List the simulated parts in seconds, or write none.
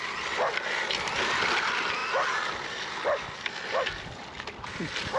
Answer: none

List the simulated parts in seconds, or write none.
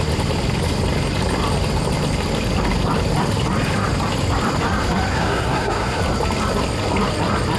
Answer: 5.1-6.0 (codec, SNAC)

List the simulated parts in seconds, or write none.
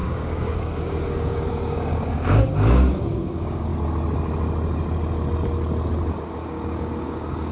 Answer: 0.0-3.7 (codec, DAC); 6.2-7.5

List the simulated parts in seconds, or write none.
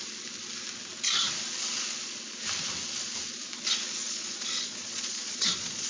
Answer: 4.0-5.9 (vocoder, Vocos)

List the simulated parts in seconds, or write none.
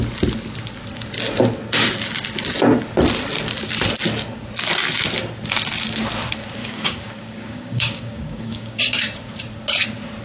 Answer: 6.6-8.8 (codec, DAC)